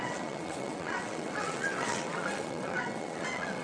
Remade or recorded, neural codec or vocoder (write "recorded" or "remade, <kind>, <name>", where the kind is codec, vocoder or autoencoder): remade, vocoder, WaveNeXt